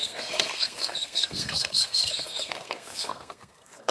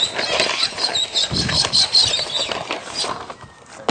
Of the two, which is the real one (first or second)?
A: second